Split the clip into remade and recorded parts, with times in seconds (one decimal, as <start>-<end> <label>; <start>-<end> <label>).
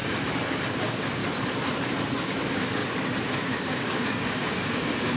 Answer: 0.0-0.7 recorded; 0.7-1.2 remade; 1.2-2.2 recorded; 2.2-2.8 remade; 2.8-3.4 recorded; 3.4-5.2 remade